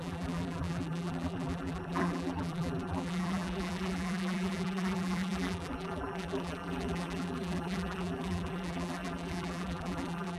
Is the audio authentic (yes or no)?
no